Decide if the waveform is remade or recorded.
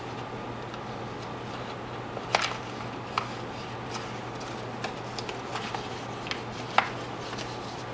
recorded